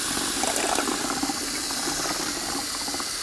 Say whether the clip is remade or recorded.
recorded